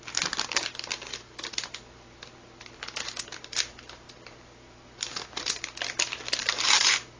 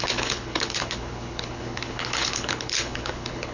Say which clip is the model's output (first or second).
second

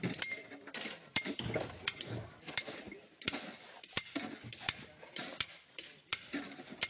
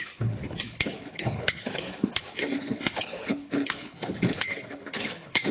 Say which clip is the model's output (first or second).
second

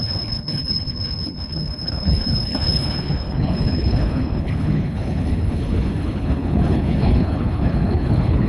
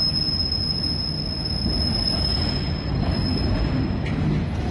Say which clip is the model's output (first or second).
first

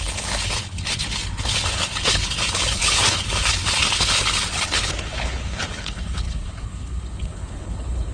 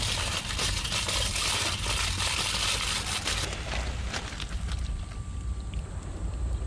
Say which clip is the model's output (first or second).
first